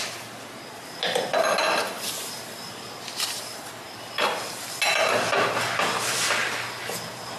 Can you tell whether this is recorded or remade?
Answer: recorded